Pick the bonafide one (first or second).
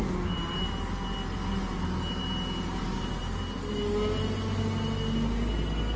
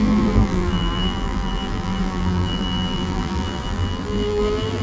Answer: first